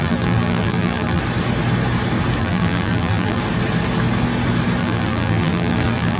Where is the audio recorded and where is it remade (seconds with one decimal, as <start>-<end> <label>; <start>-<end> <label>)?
0.0-1.2 remade; 1.2-2.4 recorded; 2.4-3.4 remade; 3.4-4.8 recorded; 4.8-6.2 remade